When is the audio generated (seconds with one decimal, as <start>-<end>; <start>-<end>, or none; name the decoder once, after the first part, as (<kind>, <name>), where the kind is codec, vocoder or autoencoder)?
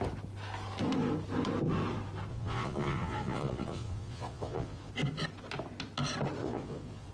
2.3-4.9 (vocoder, Vocos); 6.4-7.1